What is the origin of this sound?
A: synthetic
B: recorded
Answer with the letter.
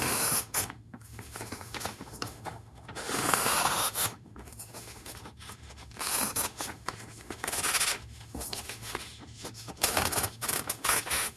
A